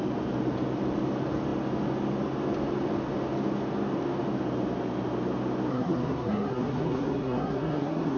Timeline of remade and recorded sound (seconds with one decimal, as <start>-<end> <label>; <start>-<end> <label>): 0.0-5.7 recorded; 5.7-8.2 remade